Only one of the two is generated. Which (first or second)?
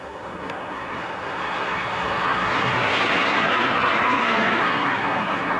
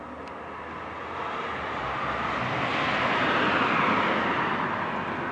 first